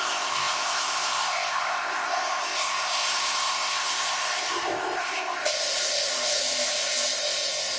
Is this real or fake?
fake